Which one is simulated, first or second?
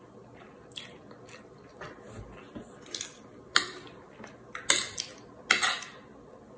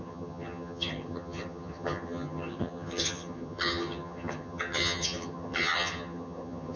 second